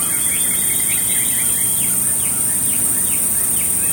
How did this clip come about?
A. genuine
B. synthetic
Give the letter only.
B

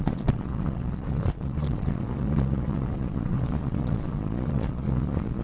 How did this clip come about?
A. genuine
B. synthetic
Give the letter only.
B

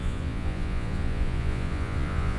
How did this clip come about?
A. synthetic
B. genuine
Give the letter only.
A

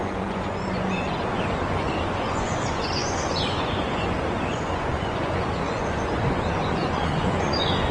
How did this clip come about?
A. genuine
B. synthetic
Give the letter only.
B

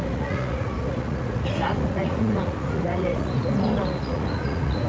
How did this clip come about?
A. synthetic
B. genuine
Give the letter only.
A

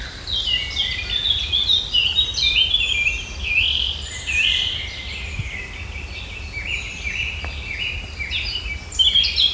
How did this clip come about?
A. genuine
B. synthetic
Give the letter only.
A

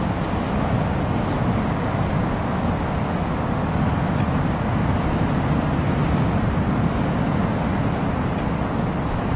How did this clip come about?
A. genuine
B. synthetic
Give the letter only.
A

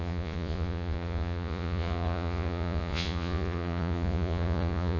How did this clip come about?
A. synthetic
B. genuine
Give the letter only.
A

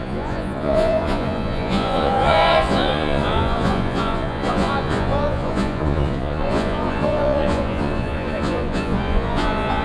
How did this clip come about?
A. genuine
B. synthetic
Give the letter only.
B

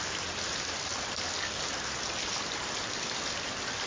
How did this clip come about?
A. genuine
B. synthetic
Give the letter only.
A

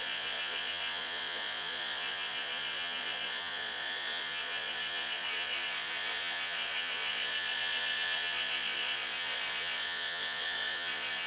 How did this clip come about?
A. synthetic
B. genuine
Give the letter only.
A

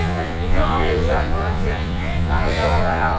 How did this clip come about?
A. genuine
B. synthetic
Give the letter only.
B